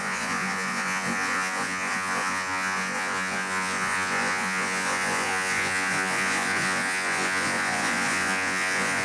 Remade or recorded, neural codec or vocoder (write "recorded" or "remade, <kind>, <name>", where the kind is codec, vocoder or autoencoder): remade, vocoder, Vocos